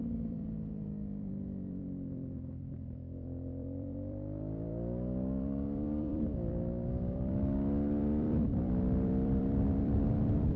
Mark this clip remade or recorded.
remade